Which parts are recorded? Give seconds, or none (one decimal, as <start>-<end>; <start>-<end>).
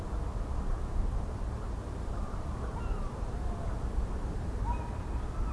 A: 0.0-1.8; 4.8-5.5